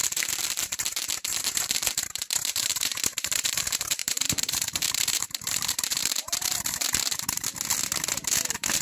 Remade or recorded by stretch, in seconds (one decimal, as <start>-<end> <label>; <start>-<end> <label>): 0.0-7.5 remade; 7.5-8.1 recorded; 8.1-8.8 remade